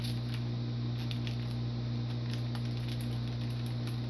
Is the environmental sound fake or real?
real